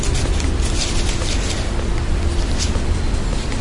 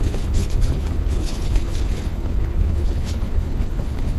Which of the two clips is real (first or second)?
first